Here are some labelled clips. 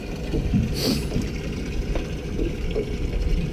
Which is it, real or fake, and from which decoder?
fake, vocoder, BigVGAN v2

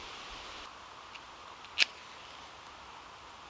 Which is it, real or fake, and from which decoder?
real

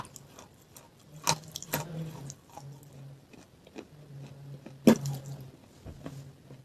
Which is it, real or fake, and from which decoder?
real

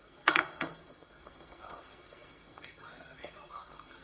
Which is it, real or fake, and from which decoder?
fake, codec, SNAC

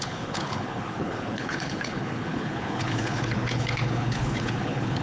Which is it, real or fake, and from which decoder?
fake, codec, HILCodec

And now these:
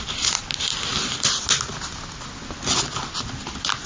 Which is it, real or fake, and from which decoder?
real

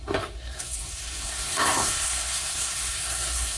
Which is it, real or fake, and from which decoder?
fake, codec, SNAC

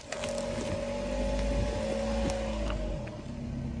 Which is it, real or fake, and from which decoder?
real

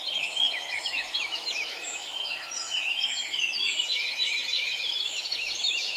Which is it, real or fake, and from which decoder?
fake, autoencoder, DAC-VAE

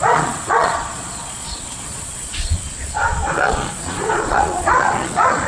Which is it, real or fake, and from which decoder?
fake, vocoder, Vocos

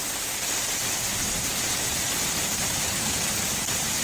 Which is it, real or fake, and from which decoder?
real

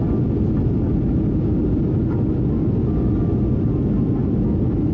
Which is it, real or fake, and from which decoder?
real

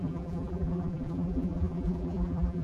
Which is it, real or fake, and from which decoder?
fake, vocoder, BigVGAN v2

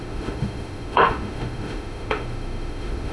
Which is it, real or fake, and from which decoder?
fake, autoencoder, DAC-VAE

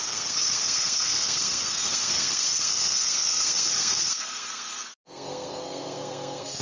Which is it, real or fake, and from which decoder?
fake, codec, SNAC